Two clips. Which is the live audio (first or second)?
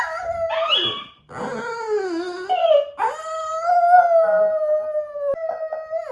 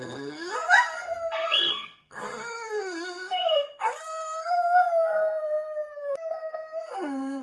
first